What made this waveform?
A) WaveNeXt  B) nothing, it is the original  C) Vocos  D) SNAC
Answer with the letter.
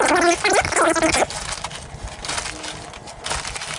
B